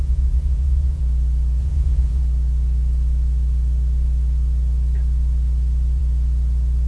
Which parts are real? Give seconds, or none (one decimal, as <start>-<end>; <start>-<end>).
1.0-1.6; 2.2-6.9